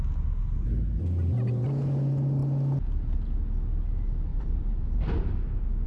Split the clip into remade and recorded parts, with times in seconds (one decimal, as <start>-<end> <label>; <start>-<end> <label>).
0.0-4.3 recorded; 4.3-5.3 remade; 5.3-5.9 recorded